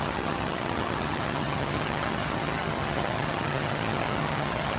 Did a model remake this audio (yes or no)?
yes